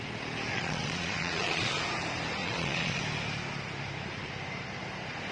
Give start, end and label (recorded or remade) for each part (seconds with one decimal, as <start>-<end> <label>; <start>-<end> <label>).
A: 0.0-0.5 recorded; 0.5-1.8 remade; 1.8-2.4 recorded; 2.4-3.0 remade; 3.0-5.3 recorded